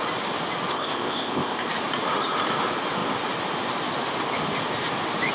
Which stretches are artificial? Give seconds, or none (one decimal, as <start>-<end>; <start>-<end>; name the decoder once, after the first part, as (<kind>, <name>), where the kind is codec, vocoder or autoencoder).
0.7-1.7 (codec, ZipCodec)

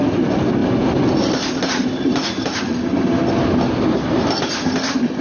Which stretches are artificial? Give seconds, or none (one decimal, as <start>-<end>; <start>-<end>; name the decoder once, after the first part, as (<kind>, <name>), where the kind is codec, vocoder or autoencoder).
none

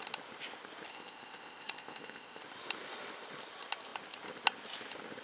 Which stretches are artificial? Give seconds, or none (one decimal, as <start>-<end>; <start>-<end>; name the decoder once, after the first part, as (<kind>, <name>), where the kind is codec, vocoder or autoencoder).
0.9-2.4 (codec, ZipCodec)

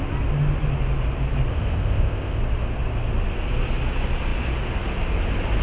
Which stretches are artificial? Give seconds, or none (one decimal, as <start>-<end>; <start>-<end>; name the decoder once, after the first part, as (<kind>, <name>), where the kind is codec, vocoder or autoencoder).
1.5-2.4 (codec, ZipCodec)

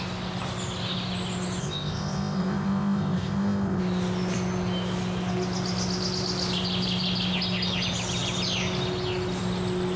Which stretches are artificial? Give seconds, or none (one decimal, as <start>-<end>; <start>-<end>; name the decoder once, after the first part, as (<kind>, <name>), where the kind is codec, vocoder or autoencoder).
1.6-3.8 (codec, ZipCodec)

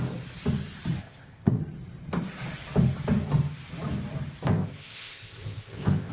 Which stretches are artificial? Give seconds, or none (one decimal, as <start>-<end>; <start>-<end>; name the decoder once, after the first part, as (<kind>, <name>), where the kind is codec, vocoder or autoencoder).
1.0-1.6 (codec, ZipCodec); 4.5-6.1

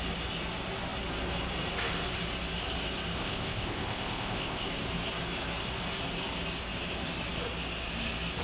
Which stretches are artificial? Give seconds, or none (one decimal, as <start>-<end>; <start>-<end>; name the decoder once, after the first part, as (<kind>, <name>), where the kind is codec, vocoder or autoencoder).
3.2-4.7 (codec, ZipCodec)

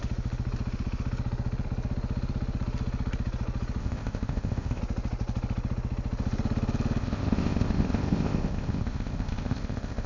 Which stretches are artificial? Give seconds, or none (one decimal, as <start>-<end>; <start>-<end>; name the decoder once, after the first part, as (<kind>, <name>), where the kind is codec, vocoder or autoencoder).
3.8-4.8 (codec, ZipCodec); 7.0-10.1